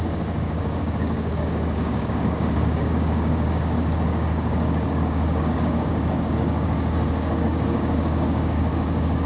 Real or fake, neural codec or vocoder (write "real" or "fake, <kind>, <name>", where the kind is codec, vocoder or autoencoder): fake, codec, DAC